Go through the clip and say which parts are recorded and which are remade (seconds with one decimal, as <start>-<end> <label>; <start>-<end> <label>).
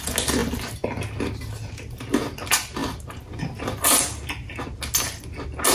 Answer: 0.0-5.7 recorded